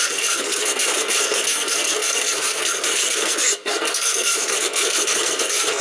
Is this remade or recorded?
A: remade